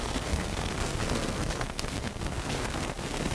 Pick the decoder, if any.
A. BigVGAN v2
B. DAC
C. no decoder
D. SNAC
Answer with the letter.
D